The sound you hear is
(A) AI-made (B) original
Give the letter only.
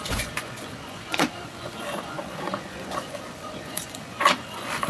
A